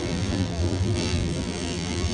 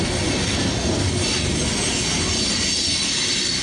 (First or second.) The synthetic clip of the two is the first